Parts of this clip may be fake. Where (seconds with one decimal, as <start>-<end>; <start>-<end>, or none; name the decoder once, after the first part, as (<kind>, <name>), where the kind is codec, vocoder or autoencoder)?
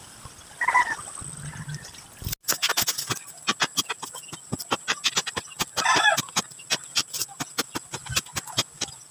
none